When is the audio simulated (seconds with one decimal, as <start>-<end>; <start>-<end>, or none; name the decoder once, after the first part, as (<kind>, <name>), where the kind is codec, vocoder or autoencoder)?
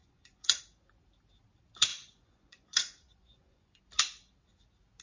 0.0-0.6 (vocoder, Vocos); 1.9-3.8